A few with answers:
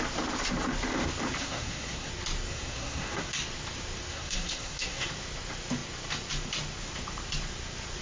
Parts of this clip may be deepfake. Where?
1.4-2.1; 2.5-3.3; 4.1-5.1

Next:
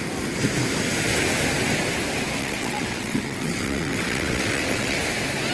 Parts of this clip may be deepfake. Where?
2.4-5.0

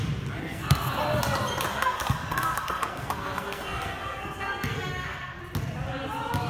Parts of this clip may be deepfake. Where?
0.4-1.0; 1.7-5.4

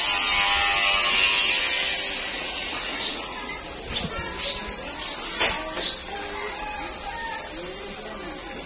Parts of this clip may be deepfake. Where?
2.3-3.6

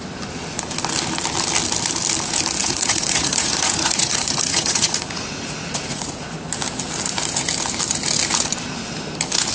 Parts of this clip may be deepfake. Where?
2.6-6.5

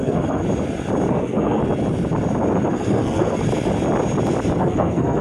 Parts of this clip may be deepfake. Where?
0.0-0.4; 1.1-1.6; 2.7-3.4; 4.6-5.2